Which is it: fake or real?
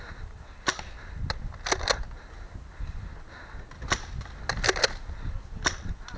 real